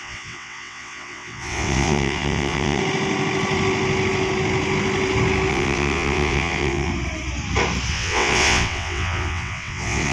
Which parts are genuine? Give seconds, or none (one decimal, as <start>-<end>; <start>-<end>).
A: 2.8-5.5; 6.9-7.9